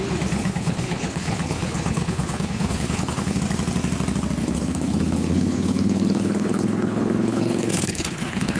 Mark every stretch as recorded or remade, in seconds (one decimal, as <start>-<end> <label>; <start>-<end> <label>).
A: 0.0-0.4 recorded; 0.4-3.4 remade; 3.4-4.4 recorded; 4.4-8.6 remade